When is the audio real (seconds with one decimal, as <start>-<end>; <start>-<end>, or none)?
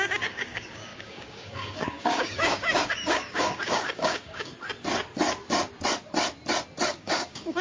4.5-6.9